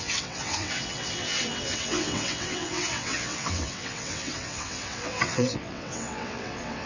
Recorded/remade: remade